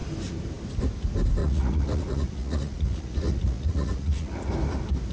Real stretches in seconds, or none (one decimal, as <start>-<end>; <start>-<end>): 0.0-1.4; 4.5-5.1